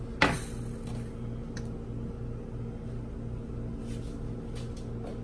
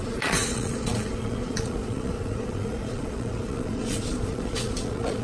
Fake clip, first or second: second